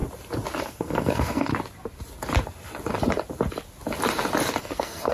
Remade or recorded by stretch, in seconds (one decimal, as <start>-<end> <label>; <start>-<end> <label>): 0.0-0.6 recorded; 0.6-1.5 remade; 1.5-4.6 recorded; 4.6-5.1 remade